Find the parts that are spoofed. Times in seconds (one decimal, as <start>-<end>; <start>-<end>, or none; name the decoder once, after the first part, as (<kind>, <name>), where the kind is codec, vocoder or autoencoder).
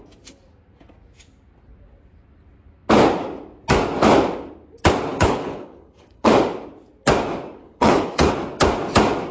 5.1-6.3 (codec, HILCodec); 7.6-8.3